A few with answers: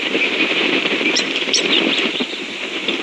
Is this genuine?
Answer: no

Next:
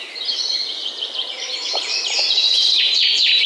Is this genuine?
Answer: no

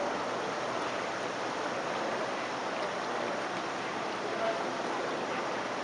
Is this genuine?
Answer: yes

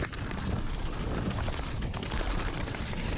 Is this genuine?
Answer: no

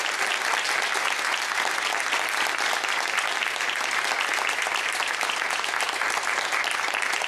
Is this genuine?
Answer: yes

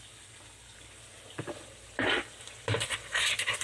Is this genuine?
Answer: no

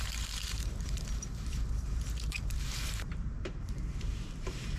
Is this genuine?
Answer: no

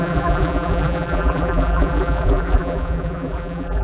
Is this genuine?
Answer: no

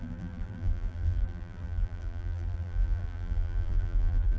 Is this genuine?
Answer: no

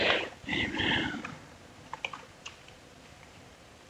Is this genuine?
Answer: no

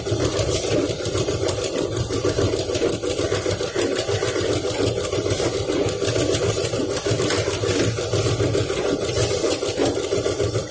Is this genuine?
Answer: no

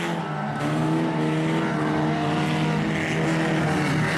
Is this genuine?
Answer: yes